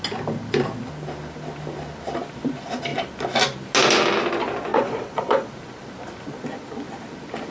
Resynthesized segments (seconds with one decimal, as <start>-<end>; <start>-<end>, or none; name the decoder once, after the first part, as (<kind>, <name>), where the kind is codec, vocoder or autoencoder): 4.7-5.5 (vocoder, Vocos)